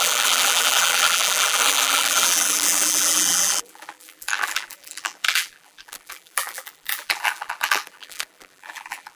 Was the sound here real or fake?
fake